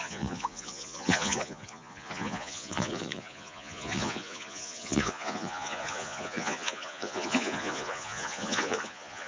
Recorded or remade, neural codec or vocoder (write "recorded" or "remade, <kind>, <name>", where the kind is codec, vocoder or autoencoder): remade, vocoder, Vocos